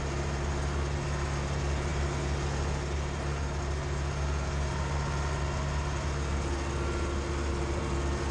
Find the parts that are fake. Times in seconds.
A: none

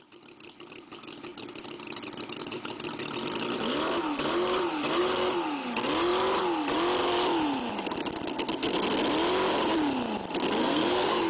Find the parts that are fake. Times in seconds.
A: 10.6-11.3 (codec, SNAC)